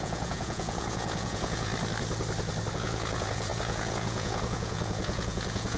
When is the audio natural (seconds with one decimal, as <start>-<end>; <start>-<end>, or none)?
1.7-2.7